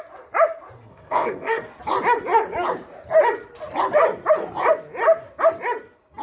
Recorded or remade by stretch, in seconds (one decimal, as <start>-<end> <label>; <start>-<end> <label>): 0.0-0.9 recorded; 0.9-1.6 remade; 1.6-6.2 recorded